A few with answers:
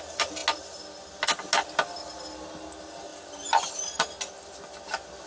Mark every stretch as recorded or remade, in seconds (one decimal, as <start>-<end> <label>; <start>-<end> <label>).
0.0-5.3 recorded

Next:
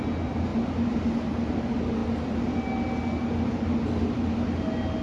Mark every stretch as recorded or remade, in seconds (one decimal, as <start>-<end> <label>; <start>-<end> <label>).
0.0-5.0 recorded

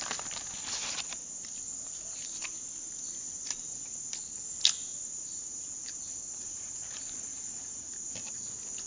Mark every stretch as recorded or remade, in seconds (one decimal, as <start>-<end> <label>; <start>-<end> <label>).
0.0-4.9 recorded; 4.9-7.0 remade; 7.0-7.7 recorded; 7.7-8.5 remade; 8.5-8.9 recorded